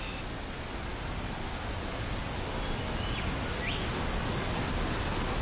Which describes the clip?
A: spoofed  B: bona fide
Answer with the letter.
B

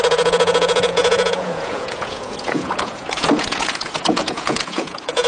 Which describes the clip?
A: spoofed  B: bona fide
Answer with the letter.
A